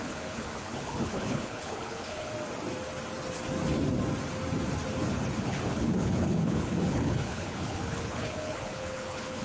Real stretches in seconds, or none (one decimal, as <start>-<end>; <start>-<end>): 2.3-5.4